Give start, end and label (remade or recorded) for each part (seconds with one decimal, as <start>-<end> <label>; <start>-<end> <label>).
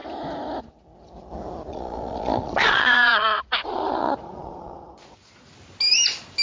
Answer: 0.0-1.7 recorded; 1.7-5.5 remade; 5.5-6.4 recorded